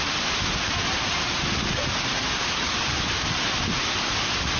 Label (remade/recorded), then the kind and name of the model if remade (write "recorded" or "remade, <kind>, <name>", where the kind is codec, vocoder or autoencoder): recorded